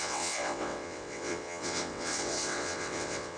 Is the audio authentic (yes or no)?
no